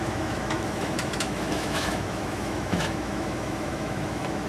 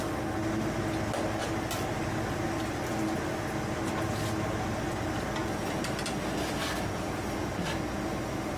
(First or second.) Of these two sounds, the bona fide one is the second